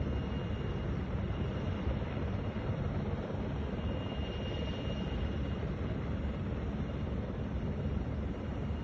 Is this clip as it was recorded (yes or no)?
yes